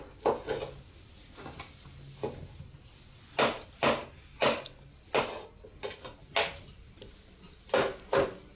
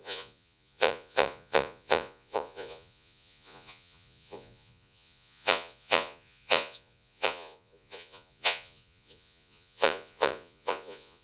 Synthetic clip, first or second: second